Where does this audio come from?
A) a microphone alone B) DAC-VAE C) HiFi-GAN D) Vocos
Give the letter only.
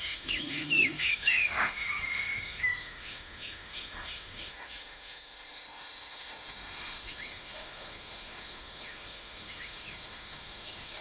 B